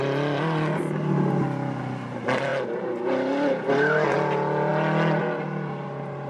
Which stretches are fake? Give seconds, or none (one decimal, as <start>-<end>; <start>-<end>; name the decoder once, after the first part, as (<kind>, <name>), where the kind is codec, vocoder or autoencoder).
none